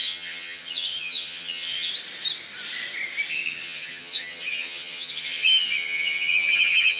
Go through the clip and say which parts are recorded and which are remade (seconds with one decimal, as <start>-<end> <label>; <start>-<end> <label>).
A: 0.0-1.9 remade; 1.9-3.3 recorded; 3.3-7.0 remade